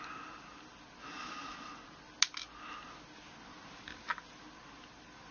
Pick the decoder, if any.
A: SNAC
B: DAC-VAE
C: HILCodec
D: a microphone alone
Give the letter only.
D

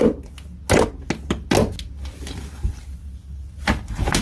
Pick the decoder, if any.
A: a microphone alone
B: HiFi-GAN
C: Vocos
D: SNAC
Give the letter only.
A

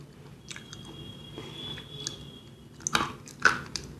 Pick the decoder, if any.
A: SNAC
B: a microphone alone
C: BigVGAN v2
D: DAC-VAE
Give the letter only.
B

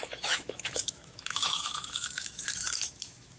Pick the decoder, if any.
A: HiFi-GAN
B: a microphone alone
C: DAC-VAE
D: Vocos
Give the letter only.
C